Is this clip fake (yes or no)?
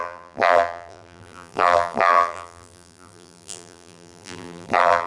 yes